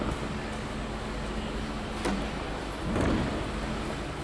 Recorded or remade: recorded